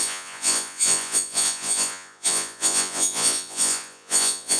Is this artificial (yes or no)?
yes